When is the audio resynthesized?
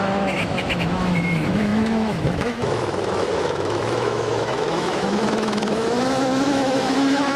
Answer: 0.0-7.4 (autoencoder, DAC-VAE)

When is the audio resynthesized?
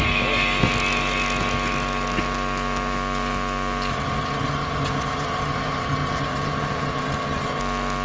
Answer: 3.9-7.6 (vocoder, HiFi-GAN)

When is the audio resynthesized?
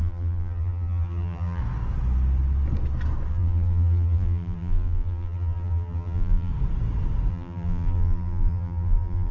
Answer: 0.0-1.6 (vocoder, BigVGAN v2); 3.3-6.5; 7.3-9.3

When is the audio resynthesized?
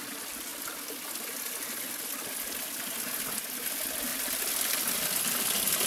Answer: none